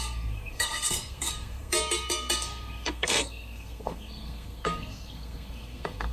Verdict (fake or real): fake